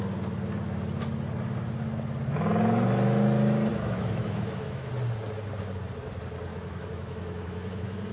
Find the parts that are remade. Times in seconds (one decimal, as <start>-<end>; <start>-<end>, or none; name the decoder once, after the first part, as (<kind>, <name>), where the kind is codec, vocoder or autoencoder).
3.7-4.9 (autoencoder, DAC-VAE); 6.5-8.1

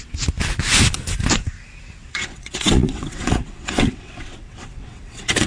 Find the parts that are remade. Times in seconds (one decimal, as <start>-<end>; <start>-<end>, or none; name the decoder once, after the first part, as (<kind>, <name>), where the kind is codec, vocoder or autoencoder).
2.0-5.5 (vocoder, WaveNeXt)

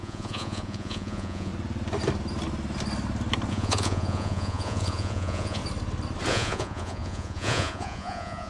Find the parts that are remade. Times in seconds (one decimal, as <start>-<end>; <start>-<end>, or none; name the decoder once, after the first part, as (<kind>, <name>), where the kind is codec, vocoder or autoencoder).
0.0-1.5 (vocoder, Vocos); 3.5-5.6; 6.3-8.5

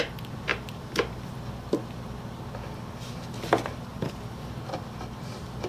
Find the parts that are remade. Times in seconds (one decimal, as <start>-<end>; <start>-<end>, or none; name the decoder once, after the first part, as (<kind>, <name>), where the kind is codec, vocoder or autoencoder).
3.9-4.5 (vocoder, BigVGAN v2)

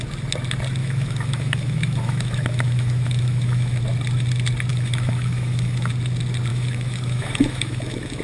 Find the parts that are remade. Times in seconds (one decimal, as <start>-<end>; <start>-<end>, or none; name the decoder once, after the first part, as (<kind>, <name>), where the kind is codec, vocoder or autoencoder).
0.8-3.8 (autoencoder, DAC-VAE); 4.7-5.9; 6.5-8.2